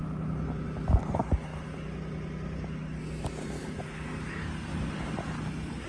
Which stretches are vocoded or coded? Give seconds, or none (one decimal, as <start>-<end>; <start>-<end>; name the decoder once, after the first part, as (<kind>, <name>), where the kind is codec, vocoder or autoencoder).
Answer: none